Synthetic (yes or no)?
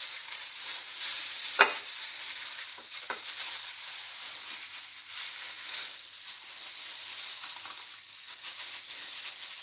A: no